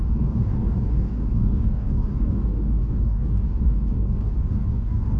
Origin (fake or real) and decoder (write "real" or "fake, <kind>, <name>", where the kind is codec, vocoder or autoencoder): fake, codec, DAC